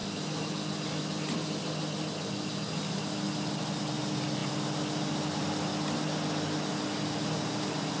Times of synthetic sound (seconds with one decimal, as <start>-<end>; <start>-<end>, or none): none